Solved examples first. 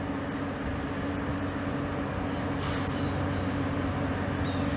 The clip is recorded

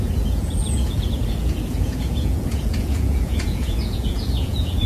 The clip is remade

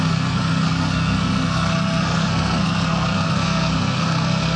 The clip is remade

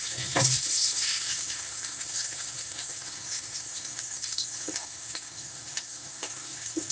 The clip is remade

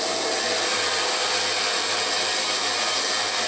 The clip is recorded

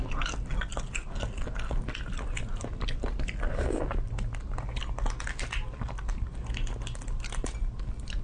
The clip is recorded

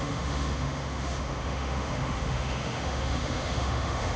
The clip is remade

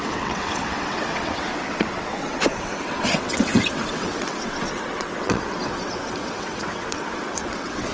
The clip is remade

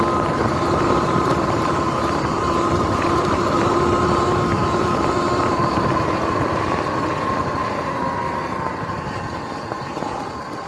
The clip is recorded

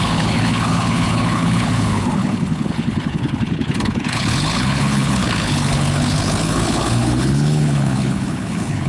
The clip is remade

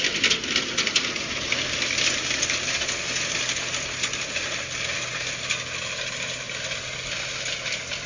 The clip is recorded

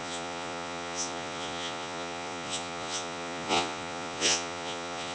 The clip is remade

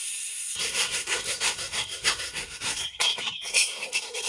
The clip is remade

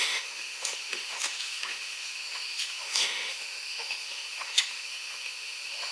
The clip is remade